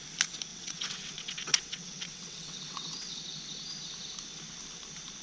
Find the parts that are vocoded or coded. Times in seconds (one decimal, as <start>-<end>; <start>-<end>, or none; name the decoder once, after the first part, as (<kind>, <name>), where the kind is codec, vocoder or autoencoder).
0.5-3.2 (vocoder, WaveNeXt)